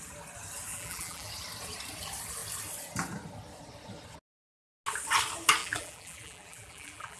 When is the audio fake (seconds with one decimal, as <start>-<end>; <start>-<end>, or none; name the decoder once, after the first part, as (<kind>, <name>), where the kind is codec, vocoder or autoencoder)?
0.7-1.3 (vocoder, BigVGAN v2); 5.6-7.2